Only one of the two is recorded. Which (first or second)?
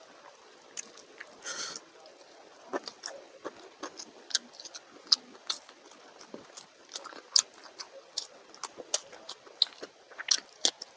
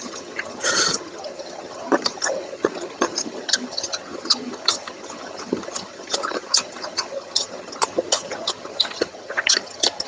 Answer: first